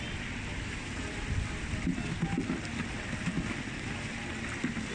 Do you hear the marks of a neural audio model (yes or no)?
no